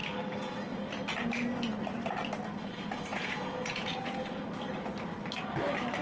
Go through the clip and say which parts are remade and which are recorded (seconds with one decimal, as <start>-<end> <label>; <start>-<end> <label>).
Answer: 0.0-3.1 recorded; 3.1-4.5 remade; 4.5-6.0 recorded